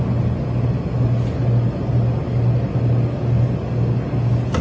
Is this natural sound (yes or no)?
yes